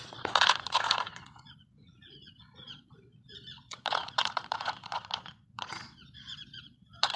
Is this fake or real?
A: fake